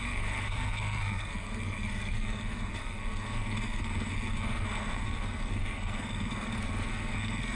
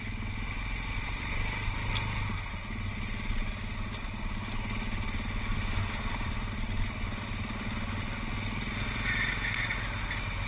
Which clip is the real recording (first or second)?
second